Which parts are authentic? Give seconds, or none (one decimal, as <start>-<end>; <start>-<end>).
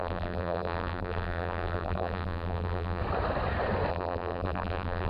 3.0-3.9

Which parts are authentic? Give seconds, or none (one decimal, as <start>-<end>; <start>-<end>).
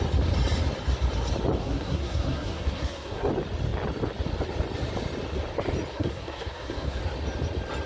0.0-1.6; 3.3-5.9; 7.0-7.9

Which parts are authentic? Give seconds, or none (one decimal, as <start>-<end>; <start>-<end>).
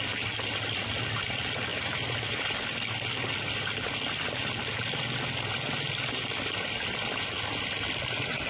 0.0-8.5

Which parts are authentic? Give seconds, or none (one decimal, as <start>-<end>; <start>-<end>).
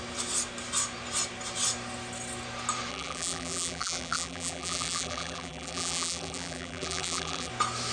0.0-2.9; 7.5-7.9